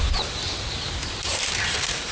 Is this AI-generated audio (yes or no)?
no